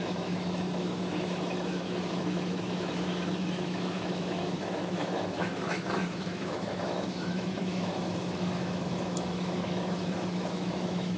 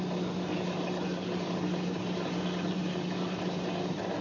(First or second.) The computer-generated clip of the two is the first